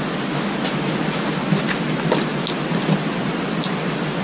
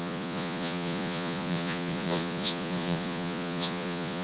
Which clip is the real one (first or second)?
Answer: first